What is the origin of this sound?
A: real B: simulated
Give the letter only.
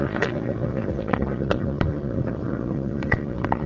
B